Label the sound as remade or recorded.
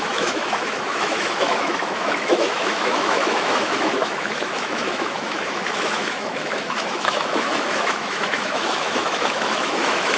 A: remade